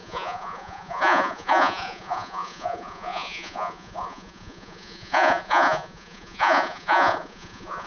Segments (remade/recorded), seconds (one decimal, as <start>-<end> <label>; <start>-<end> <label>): 0.0-7.9 remade